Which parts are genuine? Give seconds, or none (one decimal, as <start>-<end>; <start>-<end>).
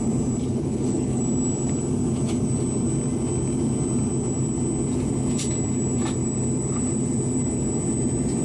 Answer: 0.0-0.4; 1.2-8.4